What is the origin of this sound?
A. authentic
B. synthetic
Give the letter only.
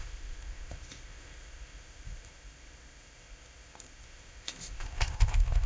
B